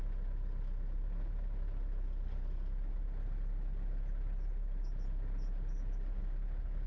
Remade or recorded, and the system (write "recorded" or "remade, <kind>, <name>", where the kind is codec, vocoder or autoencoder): recorded